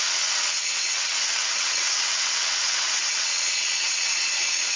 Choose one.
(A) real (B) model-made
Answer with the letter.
B